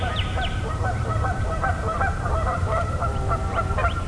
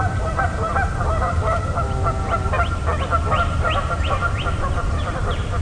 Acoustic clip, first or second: second